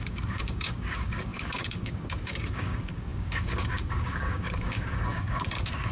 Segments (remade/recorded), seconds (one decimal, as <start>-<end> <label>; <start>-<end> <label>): 0.0-5.9 remade